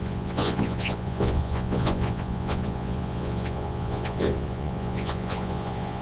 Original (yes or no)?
no